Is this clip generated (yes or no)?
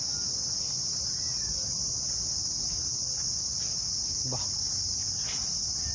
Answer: no